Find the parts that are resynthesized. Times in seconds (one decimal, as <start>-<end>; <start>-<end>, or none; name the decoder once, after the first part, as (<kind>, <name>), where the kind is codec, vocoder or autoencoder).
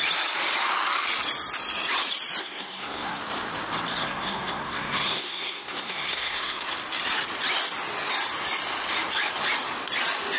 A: 2.4-3.2 (codec, SNAC); 4.0-6.7